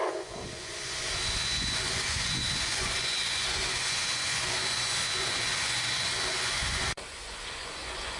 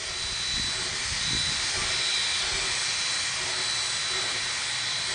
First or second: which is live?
second